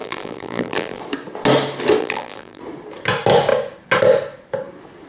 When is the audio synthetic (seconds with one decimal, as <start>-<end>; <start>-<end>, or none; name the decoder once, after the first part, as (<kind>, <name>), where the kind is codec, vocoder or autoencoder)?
0.0-1.0 (vocoder, BigVGAN v2); 2.0-2.6